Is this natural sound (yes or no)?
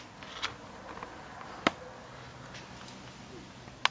yes